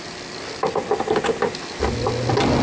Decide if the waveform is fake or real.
real